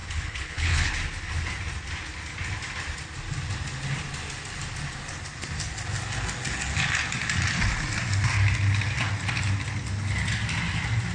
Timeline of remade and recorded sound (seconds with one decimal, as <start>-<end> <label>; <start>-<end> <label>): 0.0-0.9 remade; 0.9-11.1 recorded